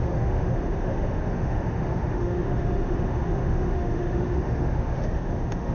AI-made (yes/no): yes